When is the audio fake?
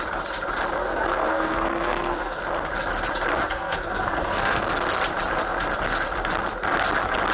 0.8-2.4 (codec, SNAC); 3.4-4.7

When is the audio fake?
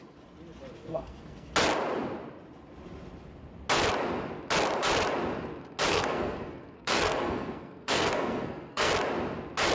0.8-1.5 (codec, SNAC); 5.9-8.9